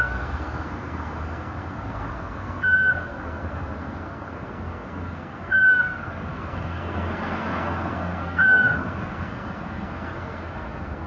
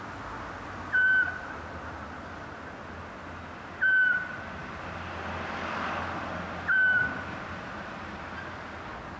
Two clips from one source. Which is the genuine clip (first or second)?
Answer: second